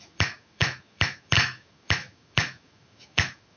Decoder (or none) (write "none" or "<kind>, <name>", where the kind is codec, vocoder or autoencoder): autoencoder, DAC-VAE